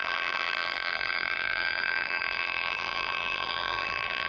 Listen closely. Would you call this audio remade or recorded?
remade